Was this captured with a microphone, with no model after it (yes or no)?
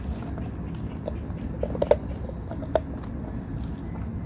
yes